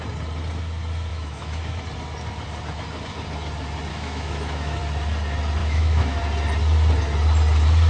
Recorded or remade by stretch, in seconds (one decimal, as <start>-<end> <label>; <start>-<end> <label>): 0.0-1.1 recorded; 1.1-1.8 remade; 1.8-3.9 recorded; 3.9-4.8 remade; 4.8-5.6 recorded; 5.6-6.2 remade; 6.2-7.9 recorded